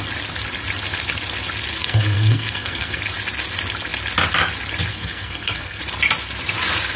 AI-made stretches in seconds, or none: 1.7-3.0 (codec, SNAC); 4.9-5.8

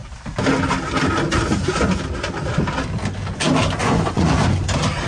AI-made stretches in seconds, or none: 3.8-4.3 (vocoder, Vocos)

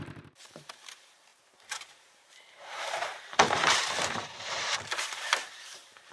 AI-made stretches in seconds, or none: 0.0-6.1 (vocoder, BigVGAN v2)